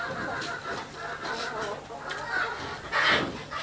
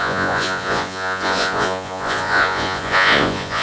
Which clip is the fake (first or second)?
second